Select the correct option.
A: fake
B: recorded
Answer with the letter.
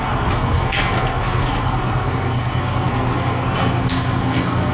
A